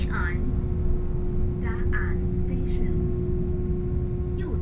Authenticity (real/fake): real